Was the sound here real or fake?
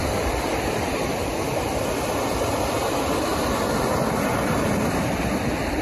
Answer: fake